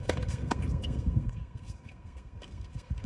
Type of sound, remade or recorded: remade